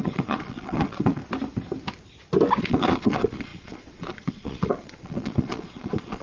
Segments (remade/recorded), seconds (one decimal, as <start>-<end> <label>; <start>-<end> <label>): 0.0-1.2 remade; 1.2-2.6 recorded; 2.6-6.2 remade